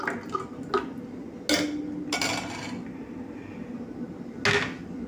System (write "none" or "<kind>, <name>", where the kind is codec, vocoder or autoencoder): none